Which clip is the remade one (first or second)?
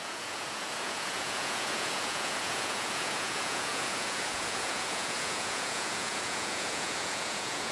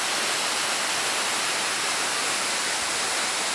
first